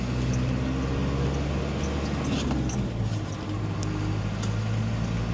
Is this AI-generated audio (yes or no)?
no